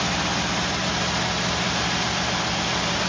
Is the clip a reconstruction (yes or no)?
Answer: no